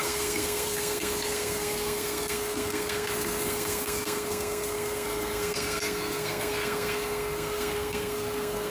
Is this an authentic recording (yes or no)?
no